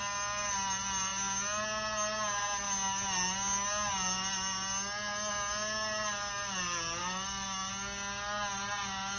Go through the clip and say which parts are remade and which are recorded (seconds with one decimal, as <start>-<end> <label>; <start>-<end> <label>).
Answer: 0.0-7.0 recorded; 7.0-7.7 remade; 7.7-9.2 recorded